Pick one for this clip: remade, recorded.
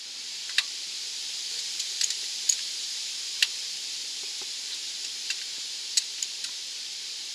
remade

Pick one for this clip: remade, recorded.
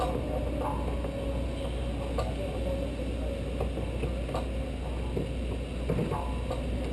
recorded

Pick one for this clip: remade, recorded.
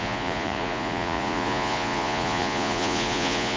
remade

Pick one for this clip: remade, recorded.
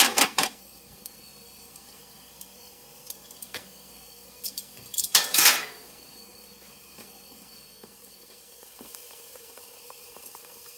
remade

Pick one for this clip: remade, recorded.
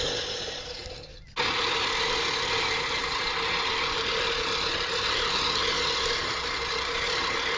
recorded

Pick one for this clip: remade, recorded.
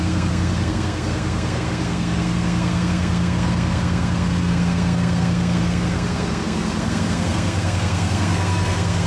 remade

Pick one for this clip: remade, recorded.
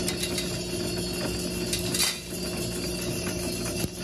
recorded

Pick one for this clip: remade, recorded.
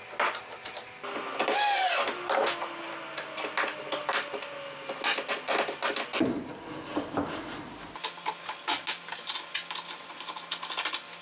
recorded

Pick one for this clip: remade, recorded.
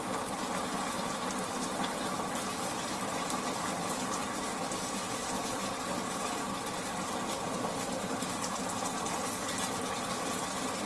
recorded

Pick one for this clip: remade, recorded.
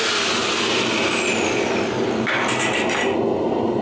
recorded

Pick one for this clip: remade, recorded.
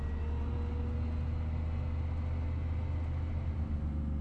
recorded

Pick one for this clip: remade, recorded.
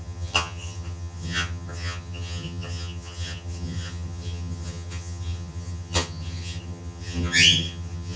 remade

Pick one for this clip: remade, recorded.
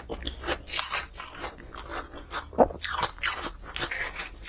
recorded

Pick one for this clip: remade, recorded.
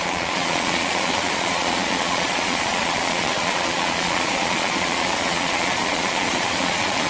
remade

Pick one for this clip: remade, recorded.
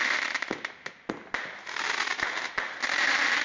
recorded